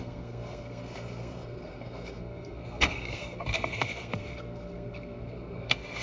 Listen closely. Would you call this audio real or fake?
fake